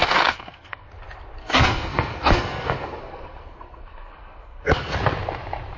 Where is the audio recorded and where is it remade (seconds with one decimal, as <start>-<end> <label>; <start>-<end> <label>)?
0.0-0.9 remade; 0.9-1.4 recorded; 1.4-4.9 remade; 4.9-5.8 recorded